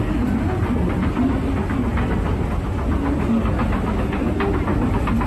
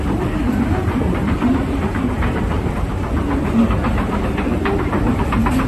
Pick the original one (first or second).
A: first